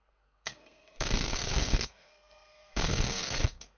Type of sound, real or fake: fake